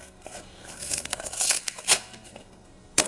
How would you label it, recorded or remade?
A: remade